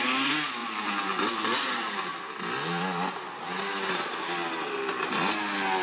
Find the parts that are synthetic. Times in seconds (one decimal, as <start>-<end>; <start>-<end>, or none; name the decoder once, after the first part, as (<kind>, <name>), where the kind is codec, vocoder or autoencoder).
none